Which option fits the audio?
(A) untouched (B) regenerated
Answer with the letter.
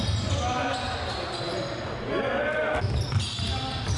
A